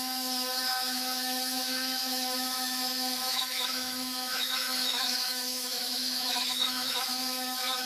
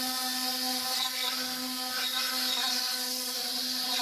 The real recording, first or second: second